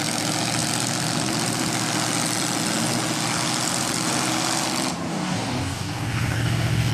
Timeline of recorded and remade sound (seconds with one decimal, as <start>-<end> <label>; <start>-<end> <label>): 0.0-5.1 recorded; 5.1-6.9 remade